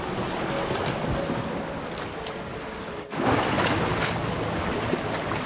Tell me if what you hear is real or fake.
real